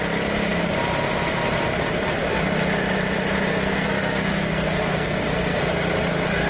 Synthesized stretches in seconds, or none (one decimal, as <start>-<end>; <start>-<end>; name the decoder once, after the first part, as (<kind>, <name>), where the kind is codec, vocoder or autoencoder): 3.5-5.6 (codec, SNAC)